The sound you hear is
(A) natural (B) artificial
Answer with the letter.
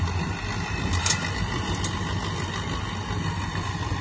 A